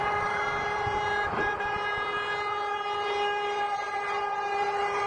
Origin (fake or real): real